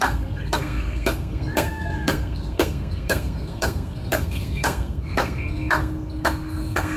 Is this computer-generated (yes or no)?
yes